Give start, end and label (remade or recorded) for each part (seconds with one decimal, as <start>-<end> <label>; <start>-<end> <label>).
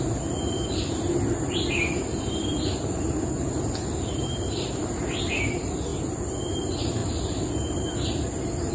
0.0-8.7 recorded